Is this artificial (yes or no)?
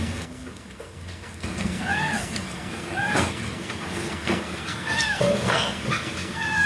yes